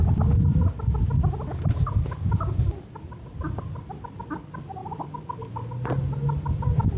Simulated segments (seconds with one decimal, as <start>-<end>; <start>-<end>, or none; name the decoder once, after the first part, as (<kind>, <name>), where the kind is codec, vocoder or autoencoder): none